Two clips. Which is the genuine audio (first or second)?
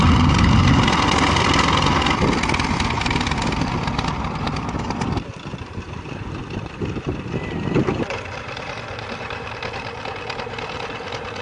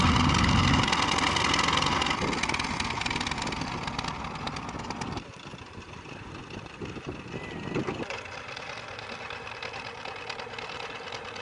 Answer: second